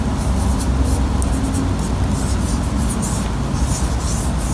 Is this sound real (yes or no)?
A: yes